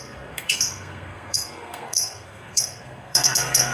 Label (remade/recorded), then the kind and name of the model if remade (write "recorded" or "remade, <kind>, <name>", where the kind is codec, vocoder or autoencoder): remade, codec, SNAC